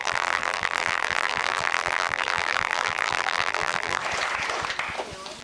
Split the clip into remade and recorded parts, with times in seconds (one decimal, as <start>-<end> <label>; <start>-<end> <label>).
0.0-4.0 remade; 4.0-5.4 recorded

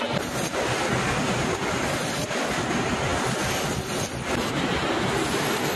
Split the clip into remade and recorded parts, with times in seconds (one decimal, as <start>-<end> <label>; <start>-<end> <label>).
0.0-5.8 recorded

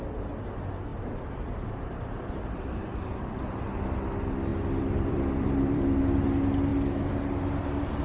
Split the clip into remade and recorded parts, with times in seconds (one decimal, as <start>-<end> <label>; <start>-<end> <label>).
0.0-0.9 recorded; 0.9-3.4 remade; 3.4-4.5 recorded; 4.5-6.0 remade; 6.0-8.0 recorded

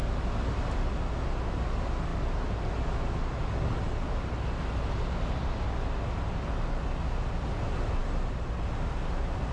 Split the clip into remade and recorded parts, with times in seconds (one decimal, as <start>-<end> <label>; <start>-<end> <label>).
0.0-9.5 recorded

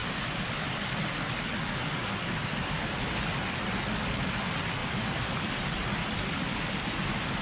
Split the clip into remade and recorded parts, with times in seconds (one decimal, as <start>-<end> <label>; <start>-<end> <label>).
0.0-0.8 remade; 0.8-4.8 recorded; 4.8-6.0 remade; 6.0-7.4 recorded

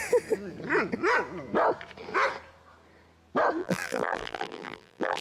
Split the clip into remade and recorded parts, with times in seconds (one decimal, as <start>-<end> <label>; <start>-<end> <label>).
0.0-3.6 recorded; 3.6-5.2 remade

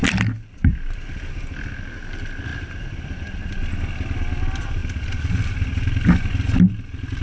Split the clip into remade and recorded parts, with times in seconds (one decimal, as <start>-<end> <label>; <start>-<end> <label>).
0.0-1.7 remade; 1.7-2.5 recorded; 2.5-3.9 remade; 3.9-7.2 recorded

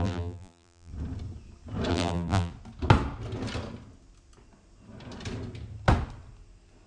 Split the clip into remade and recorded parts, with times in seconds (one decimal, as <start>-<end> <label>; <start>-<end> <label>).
0.0-0.9 remade; 0.9-1.9 recorded; 1.9-2.5 remade; 2.5-6.9 recorded